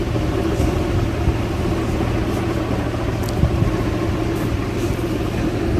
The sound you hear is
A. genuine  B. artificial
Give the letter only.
A